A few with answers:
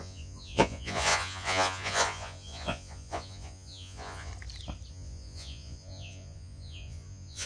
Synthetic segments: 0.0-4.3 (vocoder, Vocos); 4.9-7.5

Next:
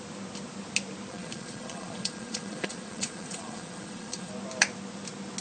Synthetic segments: 1.1-4.3 (vocoder, Vocos)

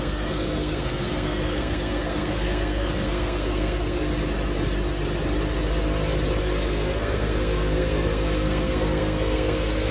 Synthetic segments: 0.0-4.1 (codec, SNAC); 6.4-9.9

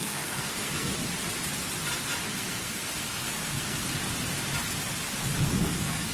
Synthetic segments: 0.0-0.9 (codec, SNAC); 2.3-3.8; 5.4-6.1

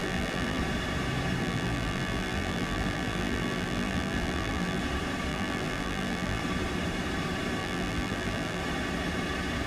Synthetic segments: 0.0-0.6 (vocoder, BigVGAN v2); 1.4-4.8; 5.3-6.4; 7.6-8.6

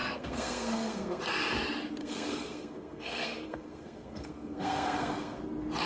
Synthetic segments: 0.0-1.2 (codec, SNAC); 2.0-5.4